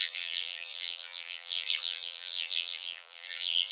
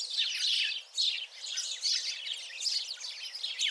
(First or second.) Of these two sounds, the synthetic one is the first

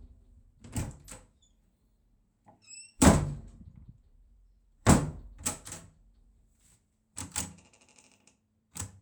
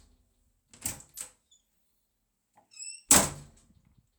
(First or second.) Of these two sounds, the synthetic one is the first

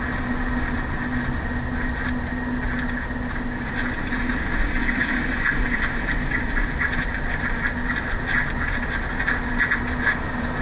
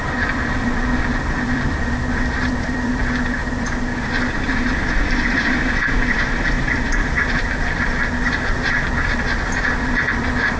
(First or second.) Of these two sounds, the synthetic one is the second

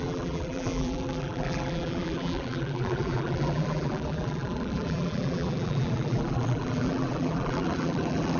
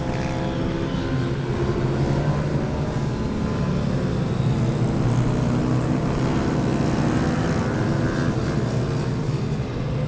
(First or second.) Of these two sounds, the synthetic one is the first